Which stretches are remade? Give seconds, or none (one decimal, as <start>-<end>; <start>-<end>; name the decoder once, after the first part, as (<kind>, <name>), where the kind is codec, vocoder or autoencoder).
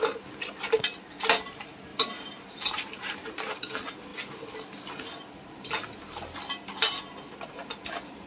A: 1.9-3.6 (vocoder, BigVGAN v2)